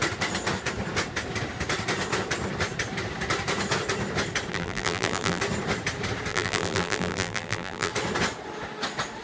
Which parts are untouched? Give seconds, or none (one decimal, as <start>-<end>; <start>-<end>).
0.0-4.5; 5.4-6.3; 7.9-9.2